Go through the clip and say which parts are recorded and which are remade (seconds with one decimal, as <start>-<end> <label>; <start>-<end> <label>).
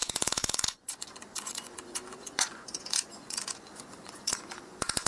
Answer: 0.0-5.1 remade